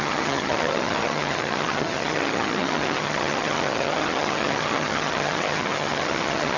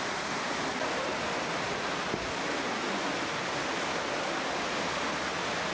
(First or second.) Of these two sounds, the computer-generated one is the first